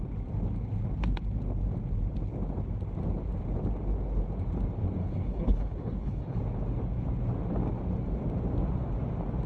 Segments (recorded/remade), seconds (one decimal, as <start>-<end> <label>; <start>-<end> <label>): 0.0-5.0 recorded; 5.0-6.4 remade; 6.4-9.5 recorded